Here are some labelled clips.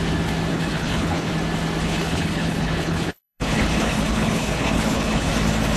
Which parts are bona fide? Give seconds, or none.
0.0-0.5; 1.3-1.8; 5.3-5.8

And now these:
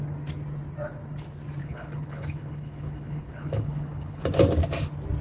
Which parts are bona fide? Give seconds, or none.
0.0-1.6; 4.2-5.2

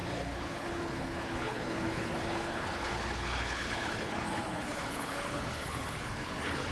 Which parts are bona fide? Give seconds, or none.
none

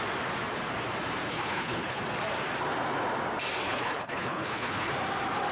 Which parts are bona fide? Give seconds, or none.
0.0-1.3; 2.0-3.6; 4.9-5.5